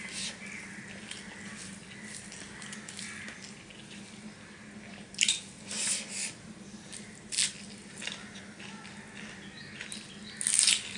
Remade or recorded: recorded